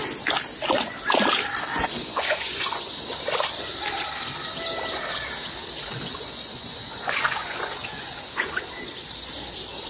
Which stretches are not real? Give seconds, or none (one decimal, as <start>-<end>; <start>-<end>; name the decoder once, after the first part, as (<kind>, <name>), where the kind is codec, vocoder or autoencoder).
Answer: 1.7-2.9 (vocoder, Vocos); 5.8-8.9